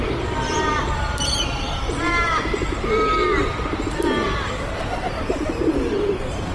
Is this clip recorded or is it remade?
remade